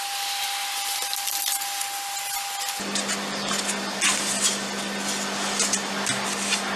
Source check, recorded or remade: recorded